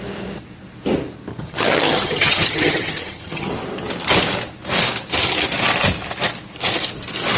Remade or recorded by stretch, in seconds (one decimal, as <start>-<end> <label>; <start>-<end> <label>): 0.0-1.3 recorded; 1.3-3.5 remade; 3.5-7.4 recorded